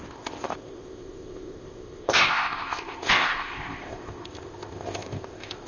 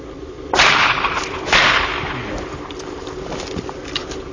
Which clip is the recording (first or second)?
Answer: second